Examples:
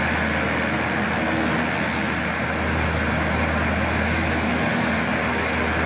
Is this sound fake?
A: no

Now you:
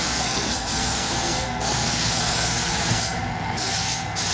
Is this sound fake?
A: yes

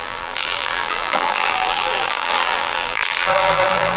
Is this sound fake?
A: yes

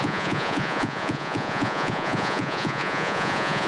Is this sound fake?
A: yes